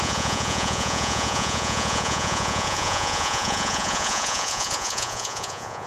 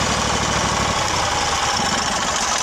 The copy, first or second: first